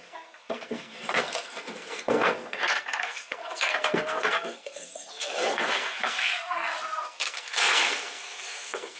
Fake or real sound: fake